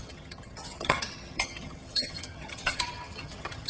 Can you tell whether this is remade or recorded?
remade